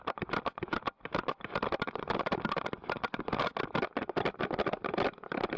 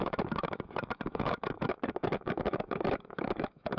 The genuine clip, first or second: first